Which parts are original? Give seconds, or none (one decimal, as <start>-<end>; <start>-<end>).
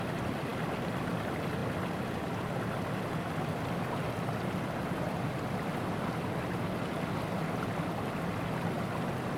0.0-9.4